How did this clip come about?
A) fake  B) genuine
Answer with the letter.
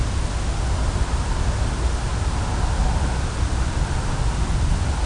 B